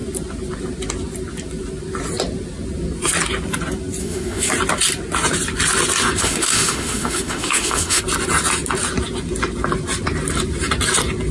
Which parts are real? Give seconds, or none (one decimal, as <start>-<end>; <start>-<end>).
0.0-4.0; 4.5-6.2; 8.0-11.3